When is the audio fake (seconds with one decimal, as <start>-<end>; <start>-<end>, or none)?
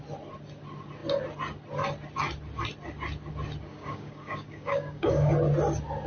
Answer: 3.7-5.3